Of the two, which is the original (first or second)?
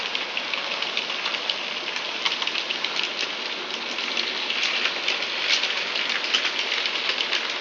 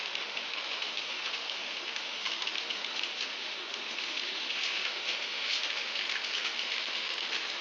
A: first